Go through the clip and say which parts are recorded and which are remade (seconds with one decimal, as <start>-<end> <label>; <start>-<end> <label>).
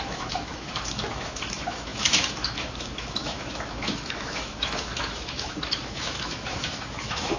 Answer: 0.0-7.4 remade